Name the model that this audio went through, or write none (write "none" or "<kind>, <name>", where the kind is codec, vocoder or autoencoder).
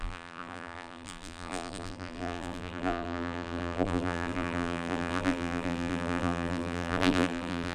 vocoder, BigVGAN v2